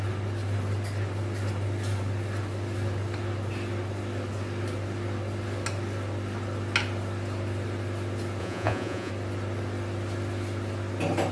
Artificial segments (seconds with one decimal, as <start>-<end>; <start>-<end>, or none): 8.4-9.1